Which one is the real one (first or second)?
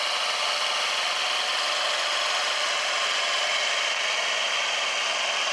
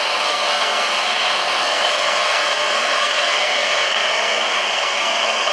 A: first